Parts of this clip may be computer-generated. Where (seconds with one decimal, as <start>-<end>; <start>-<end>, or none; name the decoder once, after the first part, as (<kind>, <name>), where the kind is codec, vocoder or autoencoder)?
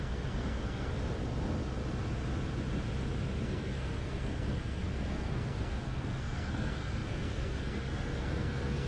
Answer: 0.0-0.9 (codec, SNAC); 3.4-8.9